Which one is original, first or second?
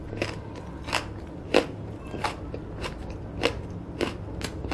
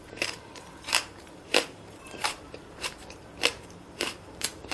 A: first